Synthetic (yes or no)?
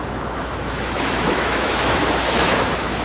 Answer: yes